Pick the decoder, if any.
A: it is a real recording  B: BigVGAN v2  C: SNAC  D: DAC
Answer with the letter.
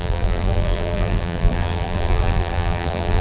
B